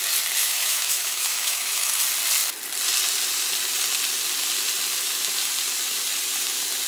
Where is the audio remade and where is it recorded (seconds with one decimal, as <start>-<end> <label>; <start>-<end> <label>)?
0.0-0.4 recorded; 0.4-2.0 remade; 2.0-6.9 recorded